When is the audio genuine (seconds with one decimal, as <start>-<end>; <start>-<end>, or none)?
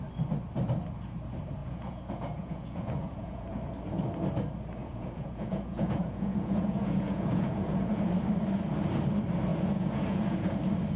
0.0-1.6; 3.6-4.8; 8.1-9.5; 10.5-11.0